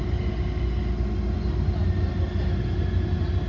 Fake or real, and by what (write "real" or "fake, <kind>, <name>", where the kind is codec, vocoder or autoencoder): real